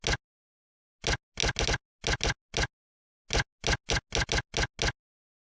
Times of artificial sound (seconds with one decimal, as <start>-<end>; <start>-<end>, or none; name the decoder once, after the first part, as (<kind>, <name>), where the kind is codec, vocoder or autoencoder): none